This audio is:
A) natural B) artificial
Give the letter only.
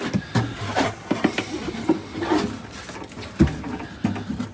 A